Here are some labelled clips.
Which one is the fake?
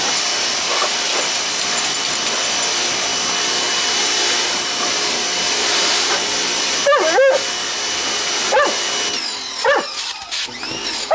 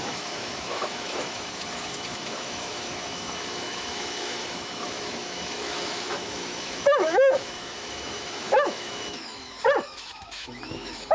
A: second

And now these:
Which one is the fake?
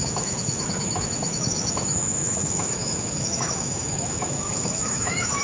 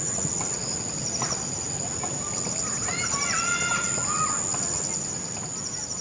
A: first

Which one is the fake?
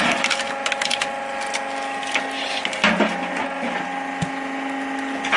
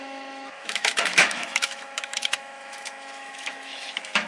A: second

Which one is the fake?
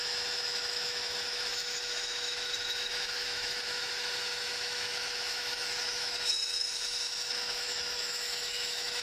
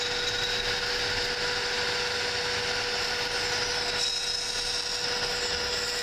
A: first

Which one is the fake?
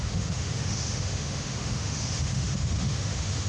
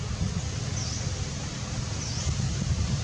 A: first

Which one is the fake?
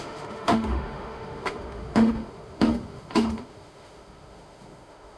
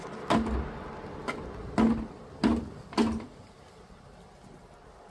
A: first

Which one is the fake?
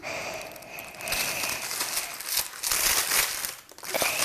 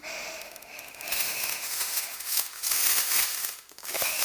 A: second